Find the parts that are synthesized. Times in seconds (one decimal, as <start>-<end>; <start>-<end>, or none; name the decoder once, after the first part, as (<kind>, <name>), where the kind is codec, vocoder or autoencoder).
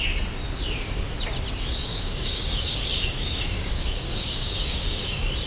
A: 1.9-5.1 (codec, DAC)